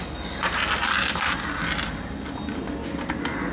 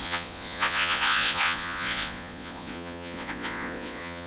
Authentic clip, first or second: first